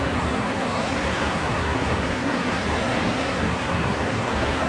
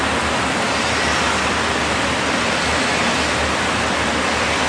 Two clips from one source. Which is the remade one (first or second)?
first